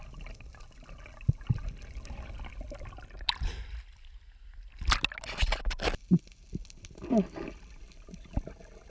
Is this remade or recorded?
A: recorded